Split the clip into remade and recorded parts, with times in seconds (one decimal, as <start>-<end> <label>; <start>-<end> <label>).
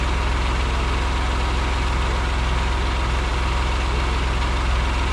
0.0-5.1 recorded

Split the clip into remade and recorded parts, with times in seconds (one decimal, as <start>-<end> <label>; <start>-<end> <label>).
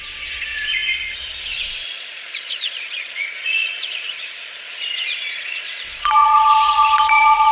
0.0-7.5 remade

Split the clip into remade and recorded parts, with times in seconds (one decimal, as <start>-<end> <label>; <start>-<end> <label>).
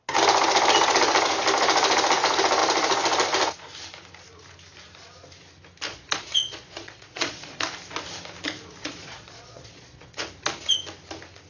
0.0-5.9 recorded; 5.9-7.6 remade; 7.6-8.8 recorded; 8.8-10.2 remade; 10.2-11.5 recorded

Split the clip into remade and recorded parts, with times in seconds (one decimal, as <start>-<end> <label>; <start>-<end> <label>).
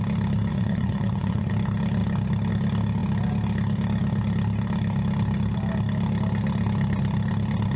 0.0-0.5 recorded; 0.5-1.5 remade; 1.5-7.8 recorded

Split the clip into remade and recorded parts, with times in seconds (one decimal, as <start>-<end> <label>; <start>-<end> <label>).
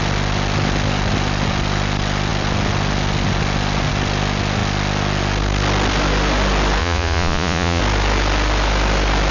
0.0-6.8 recorded; 6.8-7.8 remade; 7.8-9.3 recorded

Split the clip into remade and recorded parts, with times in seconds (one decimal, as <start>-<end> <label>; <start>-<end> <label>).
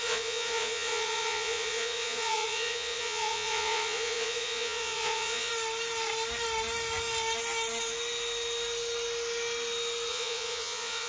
0.0-5.5 remade; 5.5-10.1 recorded; 10.1-11.1 remade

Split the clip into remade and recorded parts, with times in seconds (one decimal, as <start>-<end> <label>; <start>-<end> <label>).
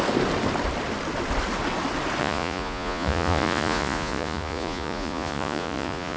0.0-2.2 recorded; 2.2-6.2 remade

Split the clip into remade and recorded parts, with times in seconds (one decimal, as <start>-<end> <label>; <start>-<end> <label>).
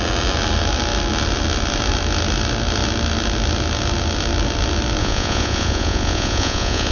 0.0-5.0 recorded; 5.0-6.9 remade